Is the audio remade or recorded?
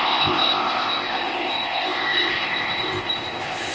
remade